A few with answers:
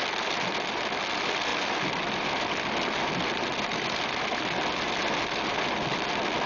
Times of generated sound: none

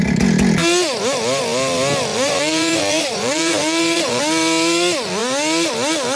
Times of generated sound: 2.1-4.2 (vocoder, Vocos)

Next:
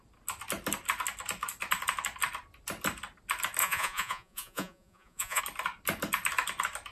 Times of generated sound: 3.6-5.4 (vocoder, Vocos)

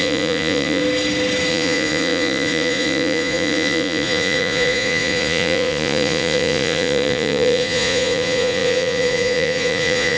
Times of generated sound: 0.0-0.8 (vocoder, Vocos); 1.5-10.2

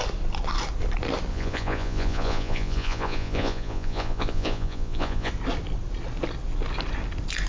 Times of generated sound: 1.3-5.3 (vocoder, Vocos)